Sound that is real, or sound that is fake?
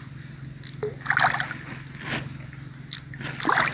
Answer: real